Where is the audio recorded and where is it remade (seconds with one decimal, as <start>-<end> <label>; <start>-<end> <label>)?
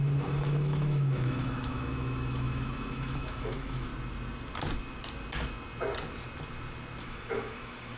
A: 0.0-3.9 remade; 3.9-7.0 recorded; 7.0-8.0 remade